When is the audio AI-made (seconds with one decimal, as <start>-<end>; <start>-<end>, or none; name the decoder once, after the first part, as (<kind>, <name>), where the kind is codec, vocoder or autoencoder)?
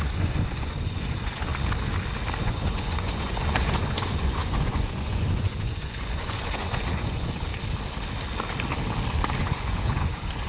0.0-1.5 (vocoder, Vocos); 2.4-7.5; 9.4-10.5